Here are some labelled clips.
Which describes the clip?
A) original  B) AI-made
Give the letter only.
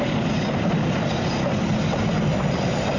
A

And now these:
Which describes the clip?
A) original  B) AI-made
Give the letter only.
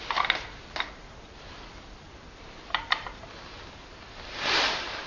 A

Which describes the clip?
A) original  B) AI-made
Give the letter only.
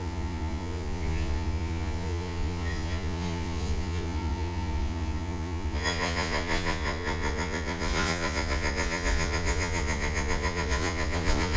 B